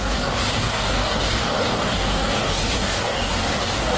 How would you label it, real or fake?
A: fake